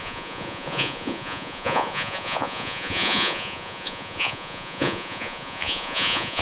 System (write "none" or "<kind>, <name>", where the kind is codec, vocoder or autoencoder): vocoder, Vocos